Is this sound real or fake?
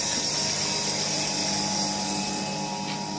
real